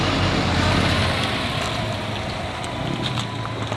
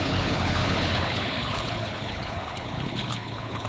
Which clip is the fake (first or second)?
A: second